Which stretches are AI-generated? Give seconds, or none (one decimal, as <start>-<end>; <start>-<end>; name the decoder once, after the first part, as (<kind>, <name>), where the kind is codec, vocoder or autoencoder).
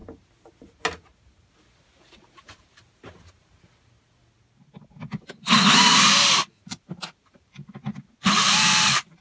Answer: 2.4-2.8 (vocoder, BigVGAN v2); 6.5-7.6; 8.2-9.2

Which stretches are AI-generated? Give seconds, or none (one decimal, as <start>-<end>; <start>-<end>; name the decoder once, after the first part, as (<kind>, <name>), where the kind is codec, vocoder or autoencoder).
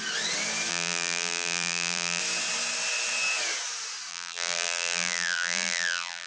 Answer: 0.7-2.2 (vocoder, BigVGAN v2); 4.1-6.3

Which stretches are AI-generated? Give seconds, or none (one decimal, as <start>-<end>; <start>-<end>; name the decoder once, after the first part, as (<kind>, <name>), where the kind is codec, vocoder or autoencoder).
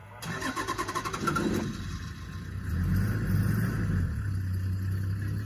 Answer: 0.0-0.9 (vocoder, BigVGAN v2)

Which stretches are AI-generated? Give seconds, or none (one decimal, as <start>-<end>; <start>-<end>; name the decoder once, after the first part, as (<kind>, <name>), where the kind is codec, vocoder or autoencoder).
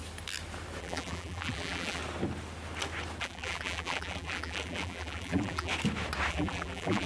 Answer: 0.8-2.0 (vocoder, BigVGAN v2); 3.2-5.7; 6.3-7.1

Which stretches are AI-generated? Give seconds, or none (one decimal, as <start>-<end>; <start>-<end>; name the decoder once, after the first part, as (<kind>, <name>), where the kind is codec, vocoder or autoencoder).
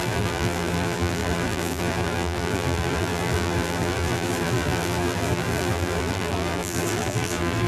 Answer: 0.0-7.7 (vocoder, BigVGAN v2)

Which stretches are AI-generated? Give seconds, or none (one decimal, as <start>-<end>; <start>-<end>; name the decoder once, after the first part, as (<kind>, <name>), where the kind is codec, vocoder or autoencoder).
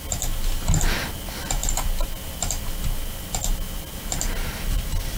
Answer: none